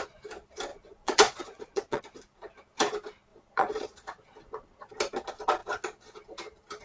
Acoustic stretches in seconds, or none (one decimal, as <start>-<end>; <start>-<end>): 0.0-0.7; 2.0-3.3; 4.9-6.8